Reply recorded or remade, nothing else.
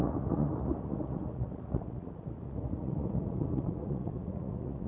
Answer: remade